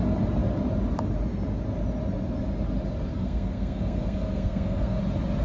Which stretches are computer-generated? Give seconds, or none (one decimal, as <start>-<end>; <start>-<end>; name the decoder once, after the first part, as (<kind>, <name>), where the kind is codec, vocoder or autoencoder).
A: 3.1-5.0 (codec, SNAC)